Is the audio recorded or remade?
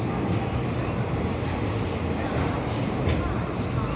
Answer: recorded